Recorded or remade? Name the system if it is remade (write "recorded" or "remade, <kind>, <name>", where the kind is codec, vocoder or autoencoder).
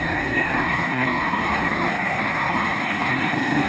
remade, codec, SNAC